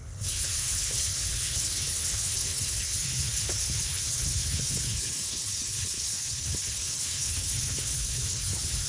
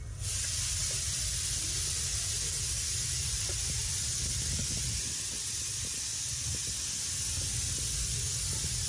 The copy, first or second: first